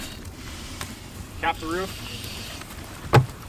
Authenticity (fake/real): fake